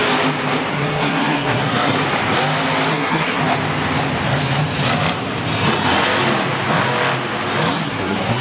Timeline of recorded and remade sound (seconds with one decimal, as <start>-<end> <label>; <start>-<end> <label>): 0.0-0.7 recorded; 0.7-2.0 remade; 2.0-2.9 recorded; 2.9-3.4 remade; 3.4-7.7 recorded; 7.7-8.4 remade